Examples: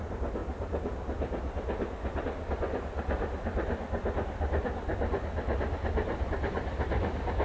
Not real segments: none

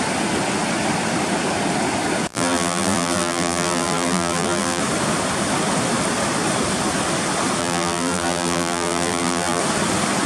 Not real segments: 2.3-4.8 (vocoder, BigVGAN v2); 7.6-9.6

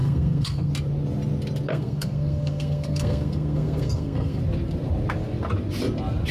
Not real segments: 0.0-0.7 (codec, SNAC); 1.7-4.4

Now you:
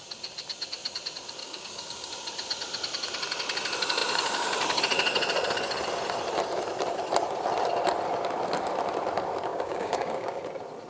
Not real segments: 1.4-2.1 (codec, DAC); 9.5-10.4